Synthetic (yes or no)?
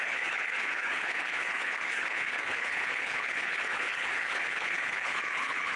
yes